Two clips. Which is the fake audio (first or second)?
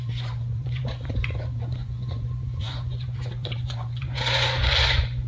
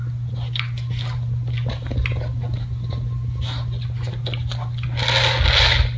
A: first